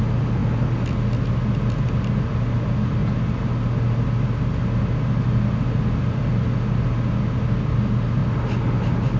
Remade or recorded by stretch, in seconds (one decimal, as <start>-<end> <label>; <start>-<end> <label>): 0.0-9.2 recorded